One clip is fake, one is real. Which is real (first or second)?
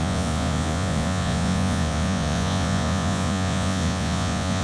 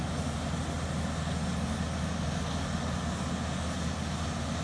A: second